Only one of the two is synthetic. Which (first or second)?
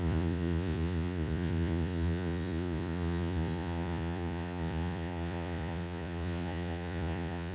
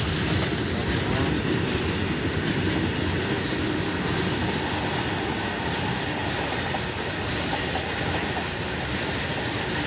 first